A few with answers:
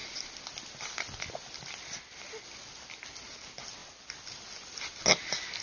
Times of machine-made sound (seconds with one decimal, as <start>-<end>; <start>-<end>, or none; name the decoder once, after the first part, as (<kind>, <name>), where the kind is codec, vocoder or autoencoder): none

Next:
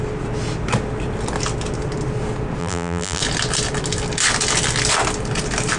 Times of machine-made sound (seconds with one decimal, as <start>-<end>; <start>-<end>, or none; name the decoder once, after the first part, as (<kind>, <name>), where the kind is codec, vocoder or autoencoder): 2.6-3.2 (vocoder, BigVGAN v2)

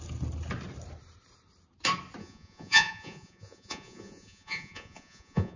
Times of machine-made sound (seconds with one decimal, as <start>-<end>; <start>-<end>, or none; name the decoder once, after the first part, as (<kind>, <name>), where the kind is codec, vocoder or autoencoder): 2.2-5.6 (vocoder, Vocos)